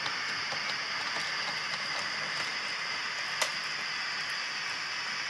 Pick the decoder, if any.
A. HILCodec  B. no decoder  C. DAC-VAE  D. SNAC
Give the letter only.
B